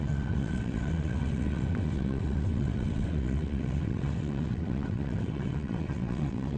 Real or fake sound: fake